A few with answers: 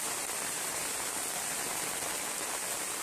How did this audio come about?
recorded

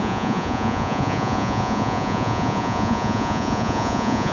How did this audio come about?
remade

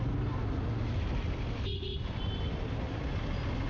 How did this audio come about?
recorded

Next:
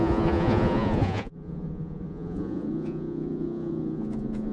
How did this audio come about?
remade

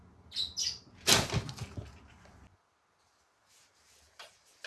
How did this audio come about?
recorded